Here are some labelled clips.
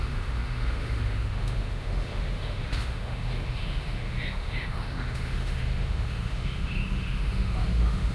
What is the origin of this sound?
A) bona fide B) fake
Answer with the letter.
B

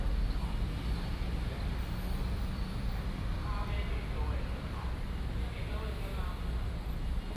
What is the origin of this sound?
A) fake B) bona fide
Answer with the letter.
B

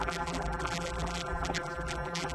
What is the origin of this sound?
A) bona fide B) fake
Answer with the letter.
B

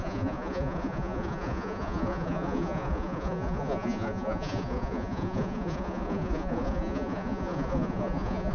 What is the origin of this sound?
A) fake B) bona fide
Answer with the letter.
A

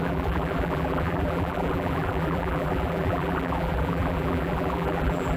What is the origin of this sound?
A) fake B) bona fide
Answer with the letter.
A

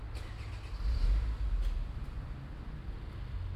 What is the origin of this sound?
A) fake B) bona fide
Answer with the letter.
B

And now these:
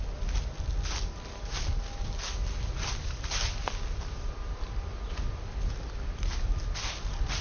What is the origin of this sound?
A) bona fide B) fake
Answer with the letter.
A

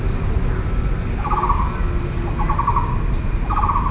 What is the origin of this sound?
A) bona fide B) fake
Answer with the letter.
A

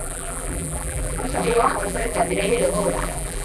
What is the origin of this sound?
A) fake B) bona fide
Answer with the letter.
A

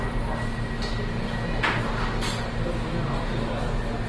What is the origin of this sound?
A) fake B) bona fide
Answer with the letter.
B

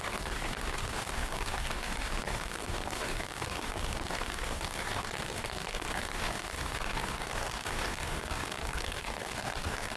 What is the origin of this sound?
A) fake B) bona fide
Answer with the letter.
A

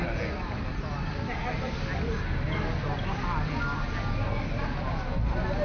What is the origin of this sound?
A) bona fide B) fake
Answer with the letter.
A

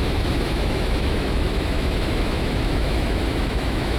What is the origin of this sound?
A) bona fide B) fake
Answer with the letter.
B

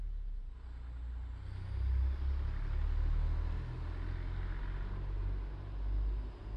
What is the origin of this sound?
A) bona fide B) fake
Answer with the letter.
A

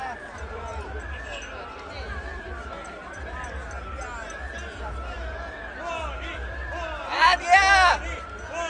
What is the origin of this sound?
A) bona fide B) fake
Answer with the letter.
A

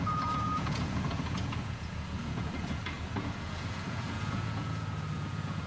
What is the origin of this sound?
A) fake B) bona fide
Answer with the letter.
A